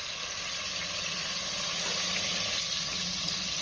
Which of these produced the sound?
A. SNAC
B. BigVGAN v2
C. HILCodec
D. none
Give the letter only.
D